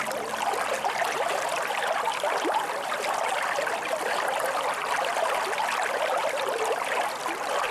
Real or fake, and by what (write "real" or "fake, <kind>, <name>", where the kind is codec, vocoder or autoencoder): real